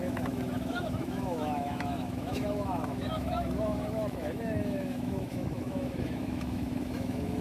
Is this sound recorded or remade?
remade